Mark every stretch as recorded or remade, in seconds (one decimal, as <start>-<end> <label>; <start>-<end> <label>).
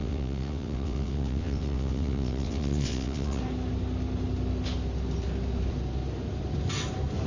0.0-3.4 remade; 3.4-7.3 recorded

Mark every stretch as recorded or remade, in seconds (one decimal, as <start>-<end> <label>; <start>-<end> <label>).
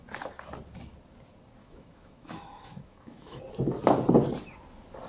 0.0-1.6 recorded; 1.6-3.4 remade; 3.4-5.1 recorded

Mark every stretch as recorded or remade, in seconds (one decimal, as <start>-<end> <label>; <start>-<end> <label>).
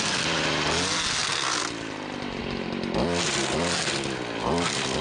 0.0-5.0 recorded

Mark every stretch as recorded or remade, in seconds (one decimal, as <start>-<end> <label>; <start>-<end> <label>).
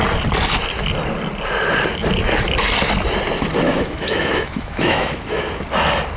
0.0-3.7 recorded; 3.7-5.4 remade; 5.4-6.2 recorded